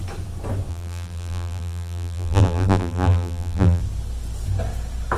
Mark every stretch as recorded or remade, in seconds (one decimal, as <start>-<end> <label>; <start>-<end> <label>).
0.0-0.7 recorded; 0.7-3.8 remade; 3.8-5.2 recorded